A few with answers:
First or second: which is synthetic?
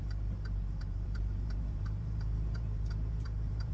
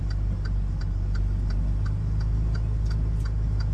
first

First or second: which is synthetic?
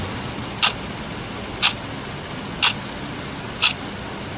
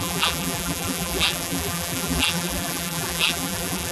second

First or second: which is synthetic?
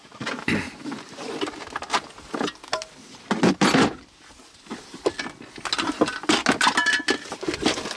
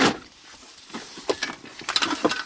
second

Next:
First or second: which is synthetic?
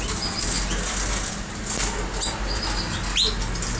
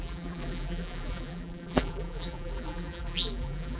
second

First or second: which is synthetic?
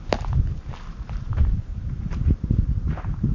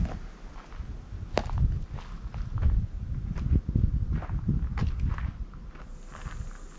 first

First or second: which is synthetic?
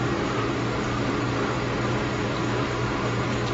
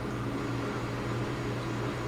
first